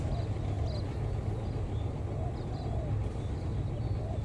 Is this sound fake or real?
real